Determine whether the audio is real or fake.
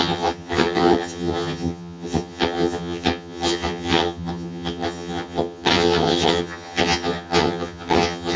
fake